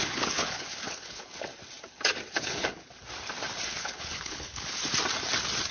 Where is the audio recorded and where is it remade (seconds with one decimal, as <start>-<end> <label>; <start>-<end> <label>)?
0.0-1.5 remade; 1.5-2.3 recorded; 2.3-2.8 remade; 2.8-3.7 recorded; 3.7-4.8 remade; 4.8-5.7 recorded